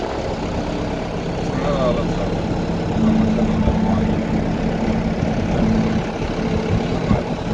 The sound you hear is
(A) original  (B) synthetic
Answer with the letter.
A